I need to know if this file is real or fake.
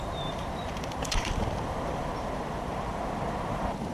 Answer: fake